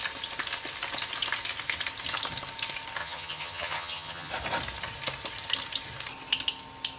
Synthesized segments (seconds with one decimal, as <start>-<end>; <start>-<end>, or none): 3.0-4.3

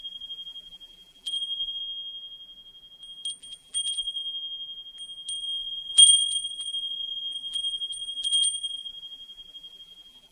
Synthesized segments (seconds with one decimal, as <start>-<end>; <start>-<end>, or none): 0.0-1.8; 3.4-4.2; 5.4-10.3

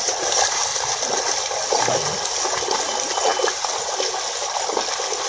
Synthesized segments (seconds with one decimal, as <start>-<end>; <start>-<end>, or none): none

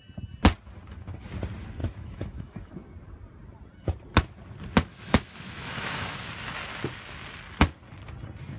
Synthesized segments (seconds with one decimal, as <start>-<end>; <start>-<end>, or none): 1.8-2.7; 4.9-6.3

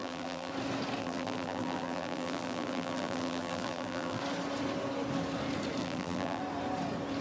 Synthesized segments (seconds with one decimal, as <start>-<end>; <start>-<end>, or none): 0.0-0.5; 1.0-4.2; 5.8-6.4

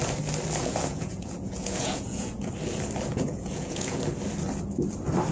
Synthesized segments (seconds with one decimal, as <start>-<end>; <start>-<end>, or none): 0.6-2.5; 3.1-4.0